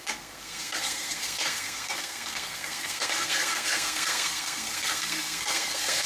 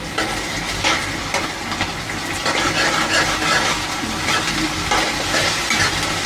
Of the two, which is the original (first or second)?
second